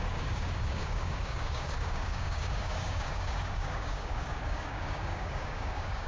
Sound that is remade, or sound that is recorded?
remade